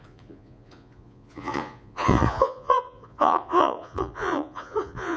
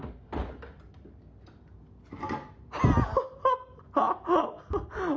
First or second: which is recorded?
second